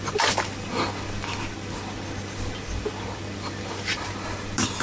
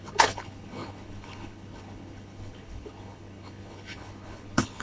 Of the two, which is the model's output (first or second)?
second